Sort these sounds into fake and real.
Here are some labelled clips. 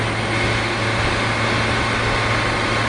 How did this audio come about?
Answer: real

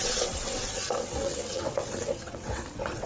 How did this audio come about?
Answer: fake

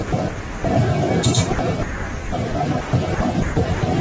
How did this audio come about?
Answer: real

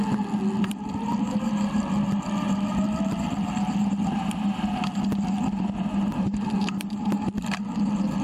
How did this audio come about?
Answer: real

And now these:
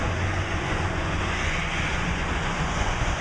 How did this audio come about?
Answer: fake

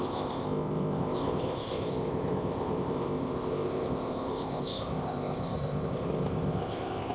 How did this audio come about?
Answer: fake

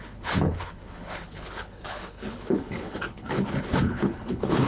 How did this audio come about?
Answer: fake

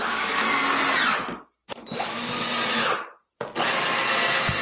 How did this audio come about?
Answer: real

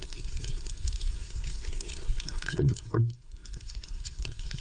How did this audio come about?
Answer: fake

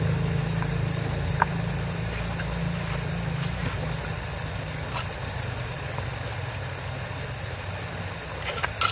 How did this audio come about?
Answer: real